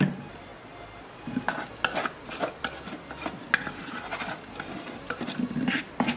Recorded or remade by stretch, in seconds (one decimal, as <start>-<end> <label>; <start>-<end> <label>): 0.0-6.2 recorded

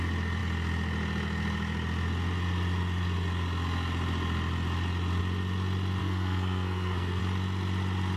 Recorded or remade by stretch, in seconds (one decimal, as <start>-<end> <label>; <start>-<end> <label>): 0.0-6.0 recorded; 6.0-7.2 remade; 7.2-8.2 recorded

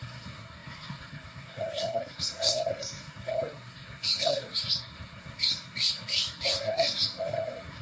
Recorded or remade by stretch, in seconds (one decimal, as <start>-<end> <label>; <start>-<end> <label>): 0.0-7.8 remade

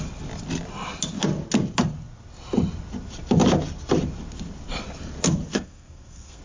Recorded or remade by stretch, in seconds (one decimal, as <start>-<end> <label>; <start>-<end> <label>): 0.0-5.5 recorded; 5.5-6.4 remade

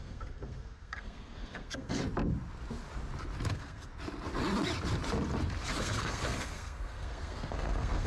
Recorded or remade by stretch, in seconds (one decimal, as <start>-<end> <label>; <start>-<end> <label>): 0.0-2.0 remade; 2.0-3.5 recorded; 3.5-3.9 remade; 3.9-5.8 recorded; 5.8-8.1 remade

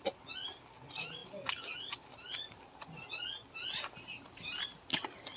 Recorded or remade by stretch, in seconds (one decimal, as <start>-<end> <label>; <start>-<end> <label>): 0.0-5.4 recorded